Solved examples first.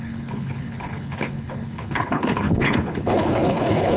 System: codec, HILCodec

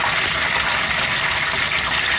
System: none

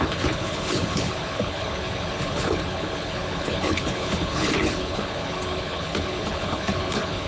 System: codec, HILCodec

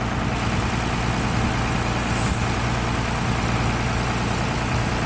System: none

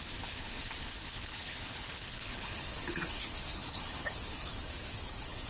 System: codec, HILCodec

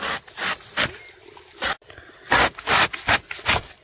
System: none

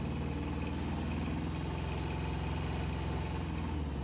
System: none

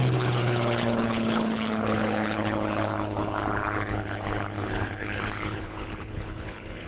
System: codec, HILCodec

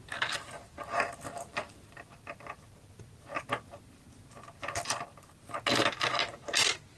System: none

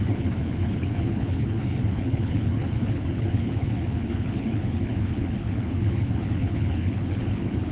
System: codec, HILCodec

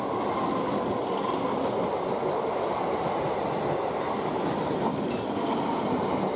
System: none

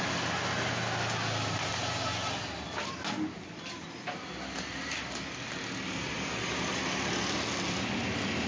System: none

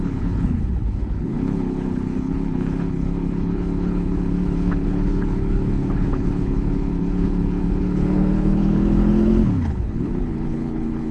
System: codec, HILCodec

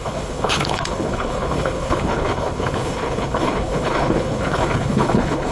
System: codec, HILCodec